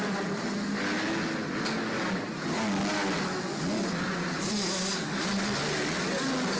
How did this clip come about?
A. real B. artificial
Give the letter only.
A